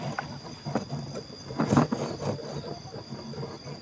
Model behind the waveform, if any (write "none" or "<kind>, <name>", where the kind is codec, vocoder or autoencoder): none